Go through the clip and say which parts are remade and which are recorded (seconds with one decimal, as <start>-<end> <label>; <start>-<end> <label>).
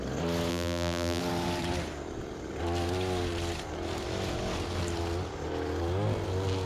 0.0-0.5 recorded; 0.5-1.2 remade; 1.2-6.7 recorded